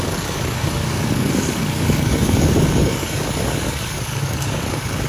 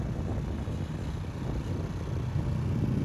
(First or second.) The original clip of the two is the second